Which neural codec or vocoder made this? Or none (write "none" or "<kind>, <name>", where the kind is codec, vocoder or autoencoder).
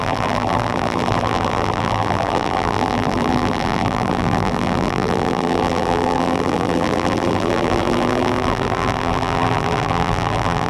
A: vocoder, BigVGAN v2